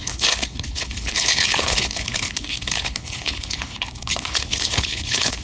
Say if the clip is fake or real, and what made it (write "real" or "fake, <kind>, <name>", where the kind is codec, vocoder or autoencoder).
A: fake, codec, HILCodec